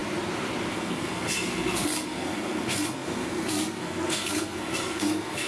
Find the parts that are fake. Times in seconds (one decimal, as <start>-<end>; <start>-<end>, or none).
0.7-5.5